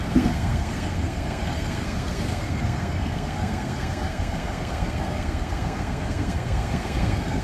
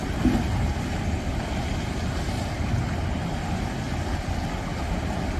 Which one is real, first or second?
second